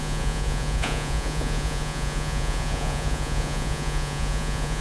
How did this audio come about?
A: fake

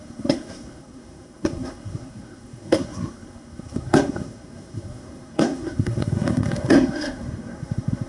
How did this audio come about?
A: fake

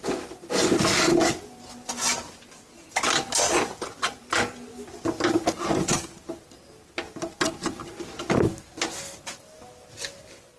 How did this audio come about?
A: real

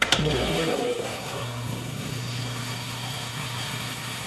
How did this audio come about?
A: fake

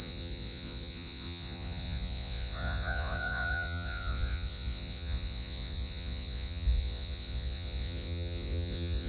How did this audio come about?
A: fake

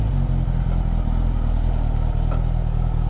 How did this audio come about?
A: real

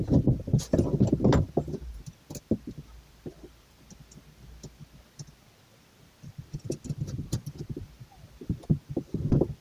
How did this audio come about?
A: real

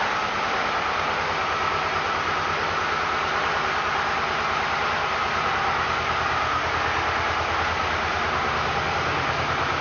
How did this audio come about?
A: real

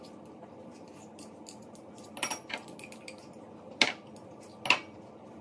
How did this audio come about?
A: real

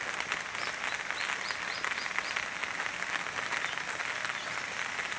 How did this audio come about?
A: real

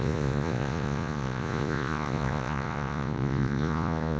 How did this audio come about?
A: fake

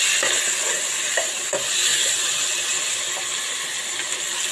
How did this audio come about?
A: real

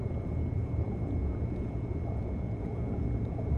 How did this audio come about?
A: fake